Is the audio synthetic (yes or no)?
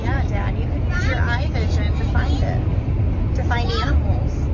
no